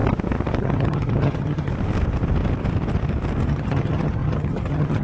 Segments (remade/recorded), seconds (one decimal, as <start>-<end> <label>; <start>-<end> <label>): 0.0-0.6 recorded; 0.6-1.7 remade; 1.7-3.5 recorded; 3.5-5.0 remade